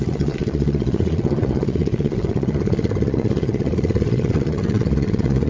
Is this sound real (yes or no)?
no